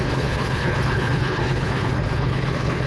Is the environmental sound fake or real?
fake